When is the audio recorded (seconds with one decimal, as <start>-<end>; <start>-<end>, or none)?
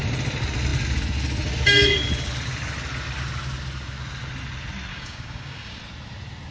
0.0-4.9; 5.8-6.5